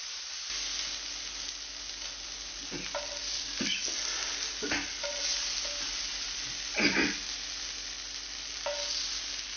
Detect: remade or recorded recorded